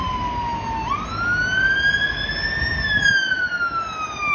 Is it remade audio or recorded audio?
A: recorded